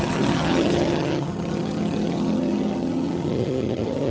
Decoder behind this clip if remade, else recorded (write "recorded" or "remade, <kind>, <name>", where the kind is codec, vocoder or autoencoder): remade, vocoder, HiFi-GAN